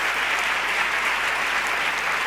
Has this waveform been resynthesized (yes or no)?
no